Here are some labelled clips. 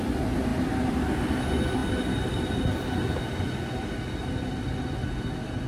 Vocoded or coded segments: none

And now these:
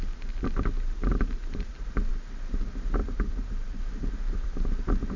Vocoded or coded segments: 1.1-2.1 (vocoder, BigVGAN v2); 3.0-3.8

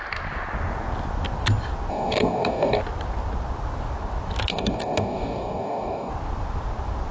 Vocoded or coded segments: 1.9-2.8 (codec, DAC); 4.5-6.1

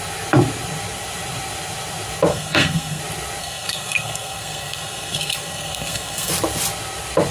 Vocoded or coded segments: 2.3-3.0 (codec, SNAC); 3.4-6.3

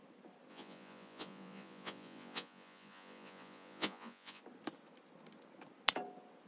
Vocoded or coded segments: 0.5-4.4 (vocoder, Vocos)

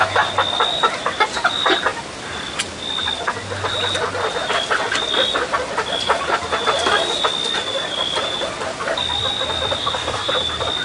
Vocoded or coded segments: 9.8-10.3 (codec, DAC)